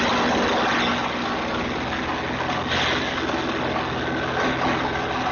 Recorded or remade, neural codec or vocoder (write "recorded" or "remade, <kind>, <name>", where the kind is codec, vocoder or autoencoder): recorded